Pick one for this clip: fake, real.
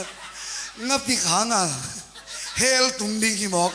fake